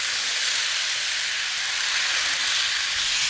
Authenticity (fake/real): real